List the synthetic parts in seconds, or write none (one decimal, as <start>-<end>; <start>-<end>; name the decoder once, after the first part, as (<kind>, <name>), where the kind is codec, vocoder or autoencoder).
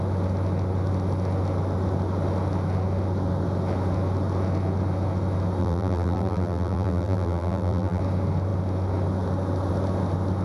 5.6-8.0 (vocoder, BigVGAN v2)